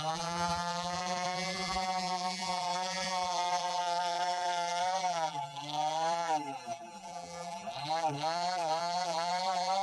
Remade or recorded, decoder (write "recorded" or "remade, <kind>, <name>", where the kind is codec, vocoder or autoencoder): remade, vocoder, BigVGAN v2